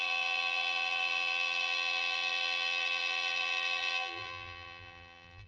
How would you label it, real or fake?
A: fake